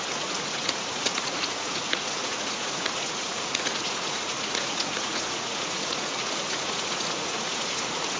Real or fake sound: fake